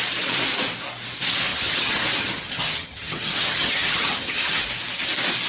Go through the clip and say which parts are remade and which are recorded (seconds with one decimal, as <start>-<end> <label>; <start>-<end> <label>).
0.0-1.5 recorded; 1.5-4.6 remade; 4.6-5.5 recorded